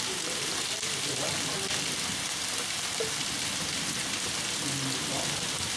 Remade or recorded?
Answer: recorded